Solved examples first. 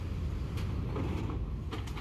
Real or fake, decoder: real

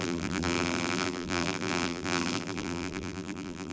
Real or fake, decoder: fake, vocoder, BigVGAN v2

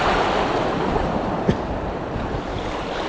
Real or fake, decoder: real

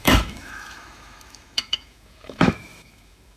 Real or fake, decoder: fake, autoencoder, DAC-VAE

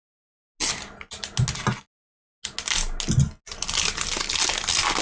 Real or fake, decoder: real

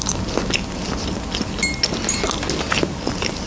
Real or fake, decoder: real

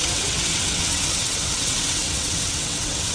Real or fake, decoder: fake, vocoder, WaveNeXt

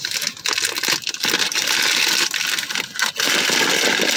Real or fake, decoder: real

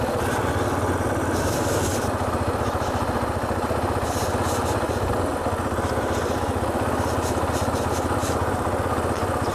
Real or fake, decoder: real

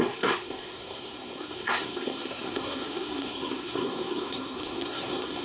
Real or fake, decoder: fake, codec, SNAC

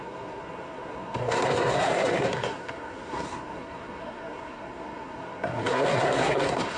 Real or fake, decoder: fake, codec, SNAC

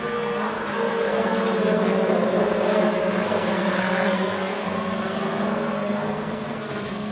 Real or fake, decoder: fake, codec, SNAC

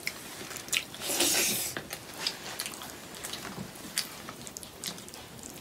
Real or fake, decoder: real